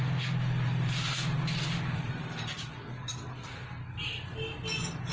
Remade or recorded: recorded